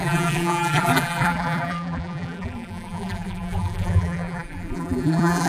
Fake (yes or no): yes